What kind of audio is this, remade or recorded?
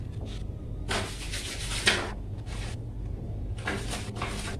recorded